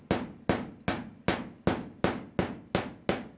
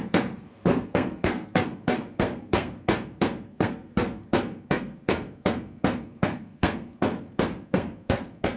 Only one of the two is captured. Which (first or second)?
first